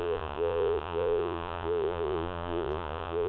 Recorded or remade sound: remade